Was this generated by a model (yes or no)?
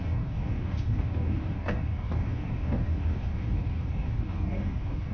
yes